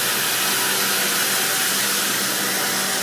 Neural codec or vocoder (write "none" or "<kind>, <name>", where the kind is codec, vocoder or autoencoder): none